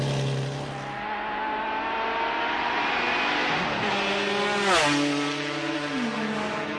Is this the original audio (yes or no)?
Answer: yes